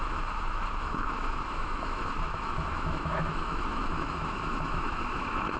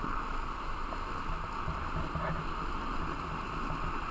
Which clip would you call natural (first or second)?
second